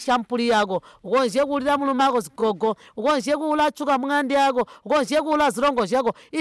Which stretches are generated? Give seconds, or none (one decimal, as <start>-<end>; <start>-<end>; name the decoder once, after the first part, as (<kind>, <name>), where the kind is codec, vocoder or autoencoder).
none